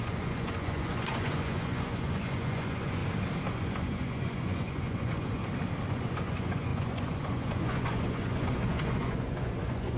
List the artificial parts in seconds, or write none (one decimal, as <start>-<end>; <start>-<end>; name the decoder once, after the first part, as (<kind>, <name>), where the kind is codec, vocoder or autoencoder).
0.0-3.0 (vocoder, Vocos); 3.5-5.4; 5.9-10.0